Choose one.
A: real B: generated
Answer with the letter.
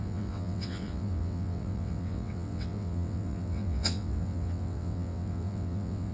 B